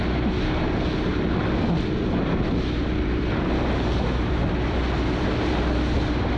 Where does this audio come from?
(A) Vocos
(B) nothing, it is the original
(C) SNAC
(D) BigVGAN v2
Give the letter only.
B